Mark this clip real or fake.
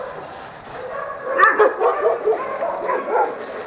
real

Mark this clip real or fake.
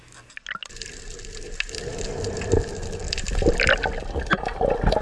real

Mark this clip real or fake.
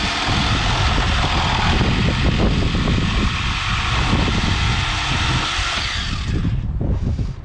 real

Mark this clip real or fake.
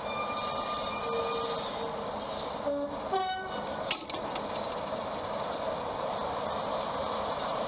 real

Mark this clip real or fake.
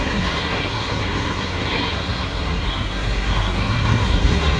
fake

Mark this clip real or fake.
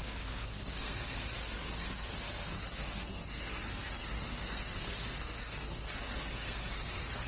fake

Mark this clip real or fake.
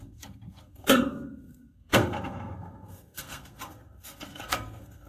fake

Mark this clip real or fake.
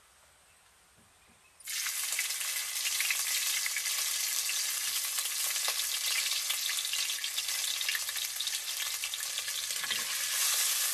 real